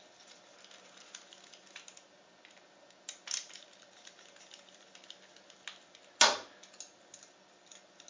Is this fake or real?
real